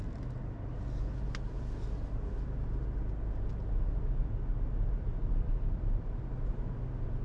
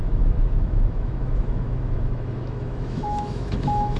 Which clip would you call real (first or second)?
first